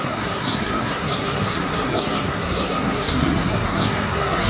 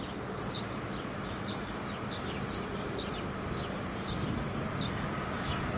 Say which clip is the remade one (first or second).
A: first